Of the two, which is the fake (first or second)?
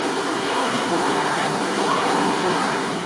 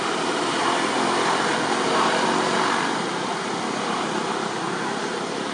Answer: first